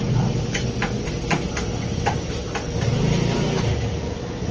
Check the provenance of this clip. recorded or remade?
recorded